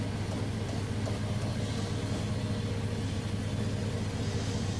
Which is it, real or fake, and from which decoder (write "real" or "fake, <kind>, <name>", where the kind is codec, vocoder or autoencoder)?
real